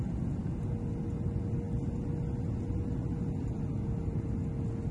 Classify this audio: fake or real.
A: real